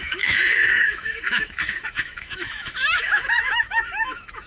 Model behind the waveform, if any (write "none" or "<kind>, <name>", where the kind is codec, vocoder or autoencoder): autoencoder, DAC-VAE